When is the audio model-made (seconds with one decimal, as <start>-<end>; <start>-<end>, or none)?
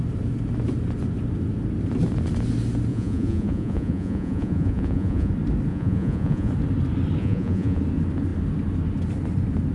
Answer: 2.9-5.3; 5.7-6.5; 7.2-7.8